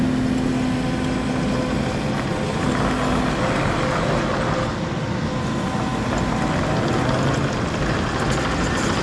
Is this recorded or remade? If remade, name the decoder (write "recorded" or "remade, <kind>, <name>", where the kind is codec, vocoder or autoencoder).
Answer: recorded